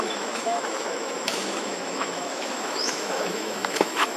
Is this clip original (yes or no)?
no